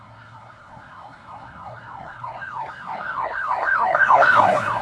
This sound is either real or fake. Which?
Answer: fake